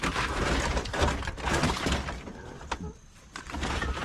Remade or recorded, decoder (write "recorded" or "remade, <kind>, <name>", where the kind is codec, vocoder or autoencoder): recorded